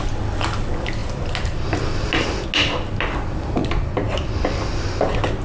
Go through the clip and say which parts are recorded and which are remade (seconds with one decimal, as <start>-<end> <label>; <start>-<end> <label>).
0.0-5.4 recorded